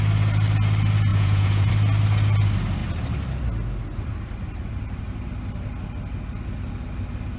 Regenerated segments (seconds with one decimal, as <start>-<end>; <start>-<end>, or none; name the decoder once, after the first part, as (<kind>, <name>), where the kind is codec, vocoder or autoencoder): 1.1-1.7 (vocoder, Vocos)

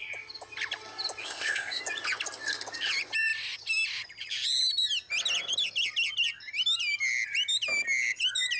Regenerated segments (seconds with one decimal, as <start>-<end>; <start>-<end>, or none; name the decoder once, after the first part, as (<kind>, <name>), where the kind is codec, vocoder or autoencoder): 1.2-1.8 (codec, ZipCodec)

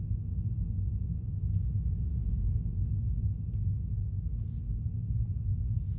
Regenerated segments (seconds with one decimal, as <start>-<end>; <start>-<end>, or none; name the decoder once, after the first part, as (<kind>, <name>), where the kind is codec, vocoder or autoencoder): 0.0-2.1 (autoencoder, DAC-VAE)

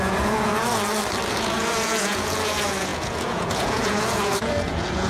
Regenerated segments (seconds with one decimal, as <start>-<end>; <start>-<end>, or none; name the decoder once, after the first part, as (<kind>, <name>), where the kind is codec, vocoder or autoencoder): 0.0-0.5 (vocoder, Vocos); 1.3-5.1

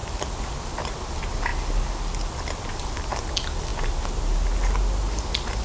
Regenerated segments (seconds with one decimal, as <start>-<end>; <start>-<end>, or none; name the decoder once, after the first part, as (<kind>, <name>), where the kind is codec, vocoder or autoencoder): none